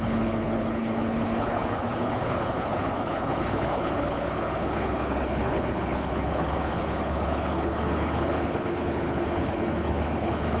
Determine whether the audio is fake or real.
fake